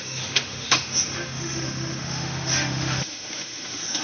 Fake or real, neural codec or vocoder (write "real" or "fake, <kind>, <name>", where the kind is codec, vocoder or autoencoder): fake, autoencoder, DAC-VAE